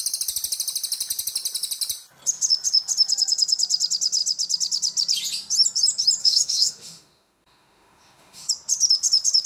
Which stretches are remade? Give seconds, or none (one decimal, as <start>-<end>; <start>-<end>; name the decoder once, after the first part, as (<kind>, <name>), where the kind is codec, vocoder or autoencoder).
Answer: 6.2-8.5 (autoencoder, DAC-VAE)